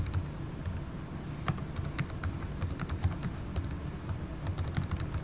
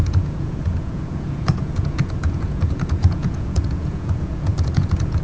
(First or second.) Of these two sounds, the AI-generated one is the second